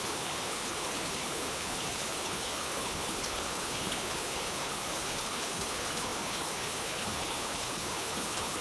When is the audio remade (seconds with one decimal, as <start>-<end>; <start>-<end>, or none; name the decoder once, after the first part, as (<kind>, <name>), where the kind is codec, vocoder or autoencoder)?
0.0-8.6 (codec, HILCodec)